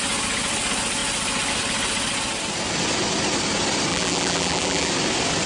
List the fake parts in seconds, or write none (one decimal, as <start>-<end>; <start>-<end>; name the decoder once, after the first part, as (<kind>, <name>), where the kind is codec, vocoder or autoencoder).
3.9-4.9 (vocoder, BigVGAN v2)